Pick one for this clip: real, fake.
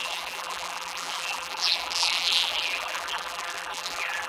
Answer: fake